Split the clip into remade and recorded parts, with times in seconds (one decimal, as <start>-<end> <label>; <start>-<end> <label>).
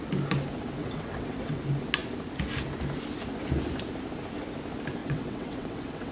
0.0-0.8 recorded; 0.8-1.6 remade; 1.6-5.0 recorded; 5.0-6.1 remade